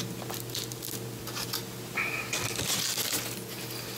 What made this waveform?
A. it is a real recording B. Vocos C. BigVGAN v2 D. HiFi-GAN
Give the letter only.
A